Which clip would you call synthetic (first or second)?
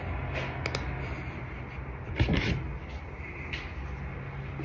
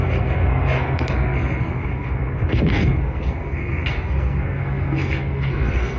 second